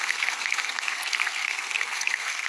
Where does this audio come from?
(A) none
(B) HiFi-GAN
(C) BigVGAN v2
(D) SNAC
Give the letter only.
D